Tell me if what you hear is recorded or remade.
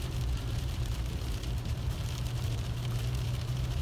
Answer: remade